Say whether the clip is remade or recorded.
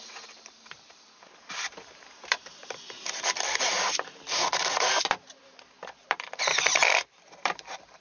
remade